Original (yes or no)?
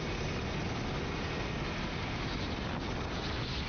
yes